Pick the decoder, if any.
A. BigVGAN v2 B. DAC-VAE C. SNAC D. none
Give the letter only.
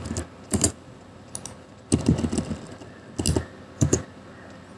D